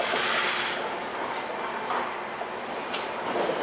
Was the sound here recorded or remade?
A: recorded